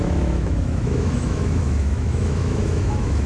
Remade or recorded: remade